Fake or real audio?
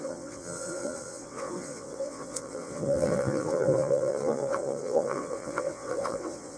fake